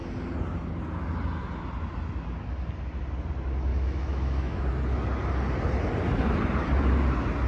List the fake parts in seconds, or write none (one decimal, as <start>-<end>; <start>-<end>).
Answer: 3.7-4.6